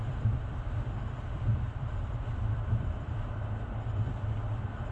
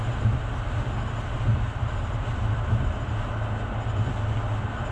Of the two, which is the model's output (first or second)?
first